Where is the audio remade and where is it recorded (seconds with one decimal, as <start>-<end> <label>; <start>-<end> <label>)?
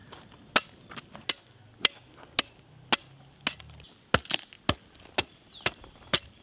0.0-6.4 recorded